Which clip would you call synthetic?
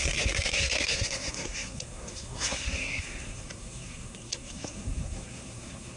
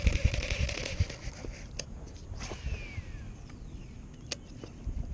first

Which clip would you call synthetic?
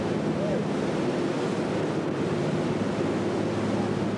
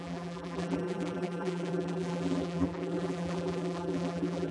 second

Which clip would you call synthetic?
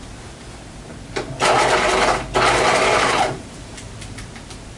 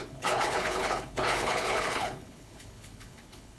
second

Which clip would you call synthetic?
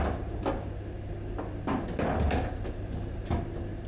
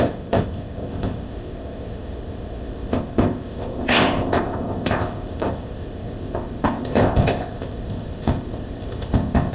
second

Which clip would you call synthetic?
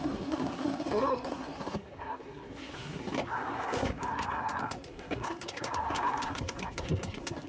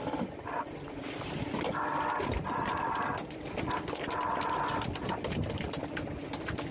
first